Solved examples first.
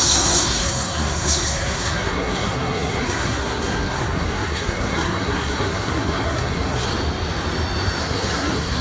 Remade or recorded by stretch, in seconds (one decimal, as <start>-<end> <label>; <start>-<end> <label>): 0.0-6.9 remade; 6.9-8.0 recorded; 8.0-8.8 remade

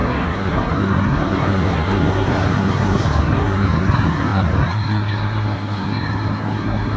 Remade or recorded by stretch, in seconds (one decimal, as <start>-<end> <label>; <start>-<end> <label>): 0.0-7.0 remade

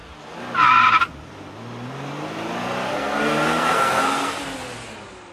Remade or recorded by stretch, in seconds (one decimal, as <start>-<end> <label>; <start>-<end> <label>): 0.0-2.9 recorded; 2.9-4.4 remade; 4.4-5.3 recorded